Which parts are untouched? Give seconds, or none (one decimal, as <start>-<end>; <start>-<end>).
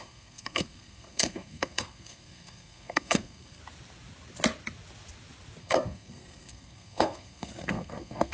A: 3.6-5.6